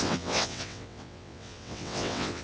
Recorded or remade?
remade